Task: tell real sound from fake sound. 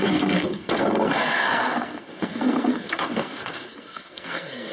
fake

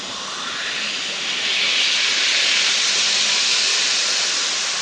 real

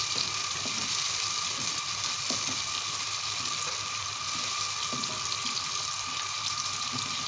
real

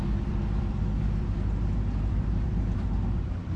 fake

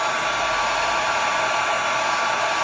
real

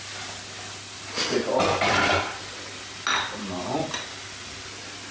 real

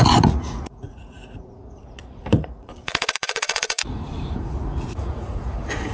fake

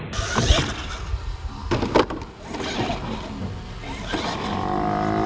real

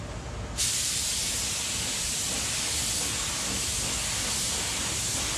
real